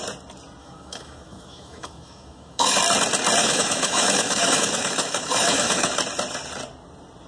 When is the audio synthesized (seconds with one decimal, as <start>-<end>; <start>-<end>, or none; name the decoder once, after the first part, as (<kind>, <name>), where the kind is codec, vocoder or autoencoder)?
0.6-2.8 (autoencoder, DAC-VAE); 3.4-5.9